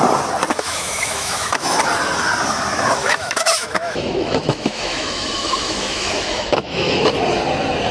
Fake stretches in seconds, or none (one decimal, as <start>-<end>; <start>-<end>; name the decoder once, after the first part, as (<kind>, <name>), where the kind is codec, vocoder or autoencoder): 0.5-1.8 (autoencoder, DAC-VAE); 3.0-6.9